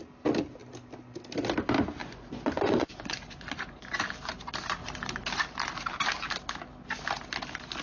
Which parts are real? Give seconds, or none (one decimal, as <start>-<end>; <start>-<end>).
0.0-2.0; 3.9-7.8

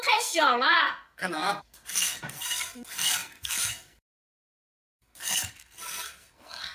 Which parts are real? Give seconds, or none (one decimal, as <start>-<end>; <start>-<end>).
none

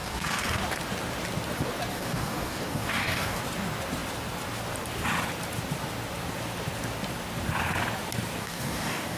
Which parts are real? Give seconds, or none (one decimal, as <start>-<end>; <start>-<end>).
0.6-1.9; 3.4-8.4

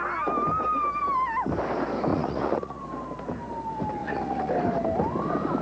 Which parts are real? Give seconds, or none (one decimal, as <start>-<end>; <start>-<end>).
0.0-2.1; 2.8-4.0; 4.5-5.6

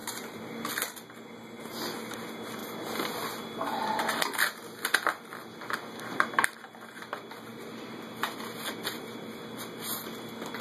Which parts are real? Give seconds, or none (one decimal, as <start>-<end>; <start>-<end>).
0.7-10.6